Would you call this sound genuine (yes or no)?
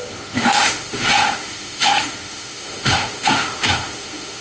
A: no